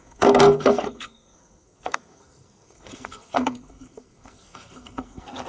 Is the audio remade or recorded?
remade